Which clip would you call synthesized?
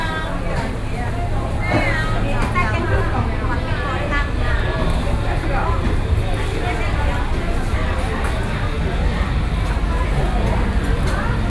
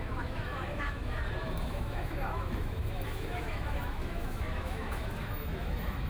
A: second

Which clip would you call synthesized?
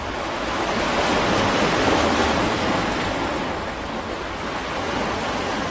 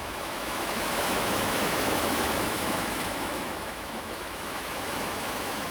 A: second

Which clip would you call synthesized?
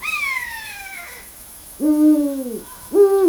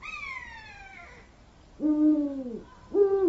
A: first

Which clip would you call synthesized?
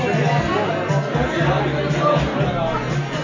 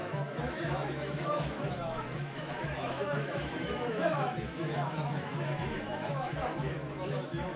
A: second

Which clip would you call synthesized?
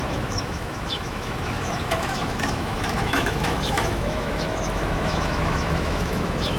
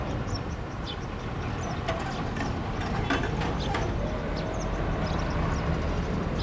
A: first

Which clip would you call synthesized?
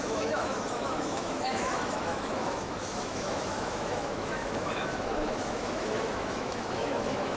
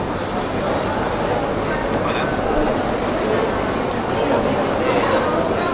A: first